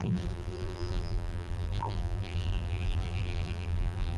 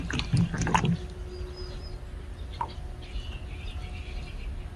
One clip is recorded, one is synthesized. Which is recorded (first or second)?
second